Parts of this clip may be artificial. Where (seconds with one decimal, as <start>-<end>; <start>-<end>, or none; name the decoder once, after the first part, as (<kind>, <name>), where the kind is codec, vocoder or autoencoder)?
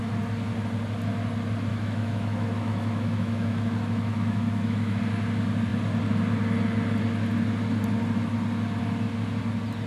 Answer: 1.7-5.0 (autoencoder, DAC-VAE)